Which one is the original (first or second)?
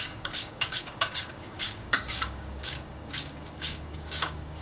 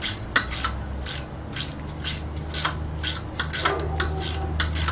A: second